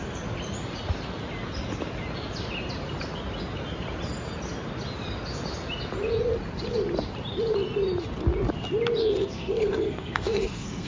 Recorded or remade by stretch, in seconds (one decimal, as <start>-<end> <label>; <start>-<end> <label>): 0.0-9.0 recorded; 9.0-10.9 remade